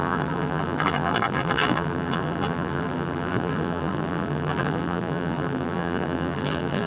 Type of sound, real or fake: fake